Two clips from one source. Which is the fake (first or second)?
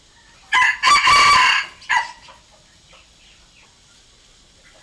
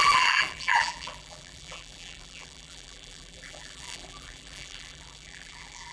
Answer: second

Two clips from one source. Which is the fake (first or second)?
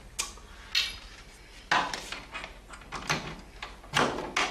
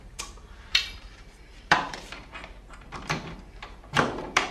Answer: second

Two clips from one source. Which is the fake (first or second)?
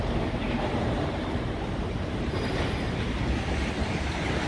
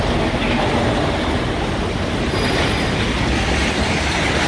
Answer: first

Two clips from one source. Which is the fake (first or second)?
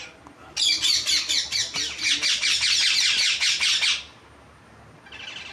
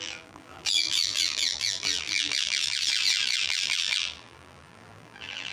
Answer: second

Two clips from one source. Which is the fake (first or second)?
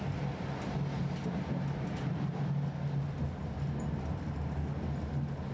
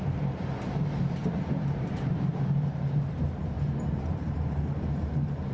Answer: second